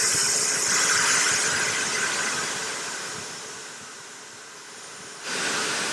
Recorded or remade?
recorded